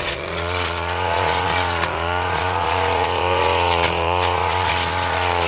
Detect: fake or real fake